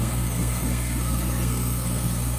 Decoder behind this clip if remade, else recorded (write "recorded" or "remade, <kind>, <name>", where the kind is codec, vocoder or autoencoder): remade, codec, SNAC